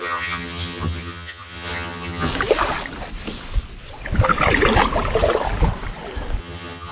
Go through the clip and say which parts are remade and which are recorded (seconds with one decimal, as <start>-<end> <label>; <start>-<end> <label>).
0.0-2.3 remade; 2.3-6.4 recorded; 6.4-6.9 remade